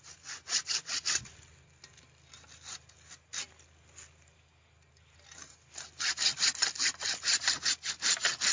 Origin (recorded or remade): recorded